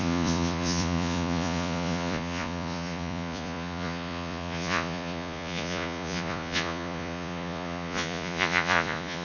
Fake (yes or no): yes